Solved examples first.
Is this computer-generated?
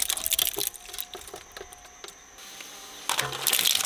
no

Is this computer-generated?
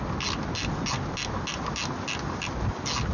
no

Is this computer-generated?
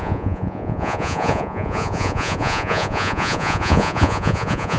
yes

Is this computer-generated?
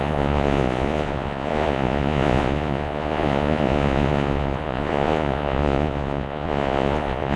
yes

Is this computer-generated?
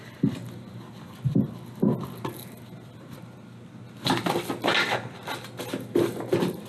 no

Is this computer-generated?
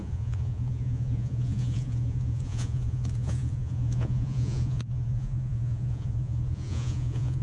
yes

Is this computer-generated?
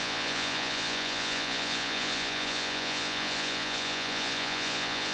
yes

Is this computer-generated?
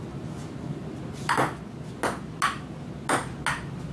no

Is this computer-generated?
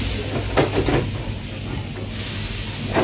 no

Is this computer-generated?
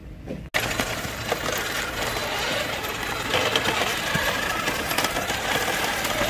no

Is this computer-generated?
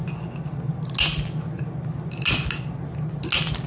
no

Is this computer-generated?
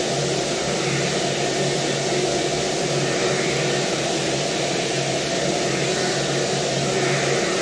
no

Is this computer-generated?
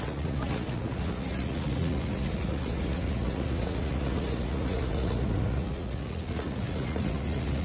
yes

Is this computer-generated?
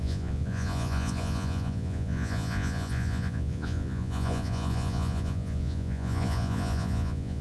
yes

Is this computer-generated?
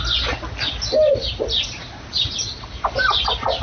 no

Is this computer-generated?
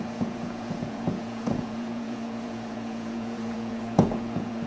yes